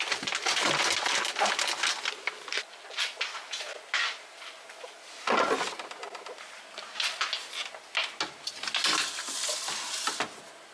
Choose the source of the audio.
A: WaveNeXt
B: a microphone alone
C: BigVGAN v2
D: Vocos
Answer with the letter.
B